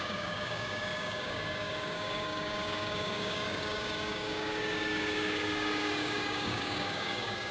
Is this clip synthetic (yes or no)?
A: yes